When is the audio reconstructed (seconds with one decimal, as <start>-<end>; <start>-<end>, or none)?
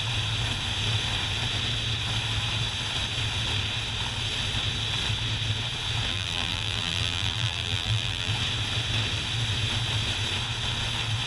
6.1-8.3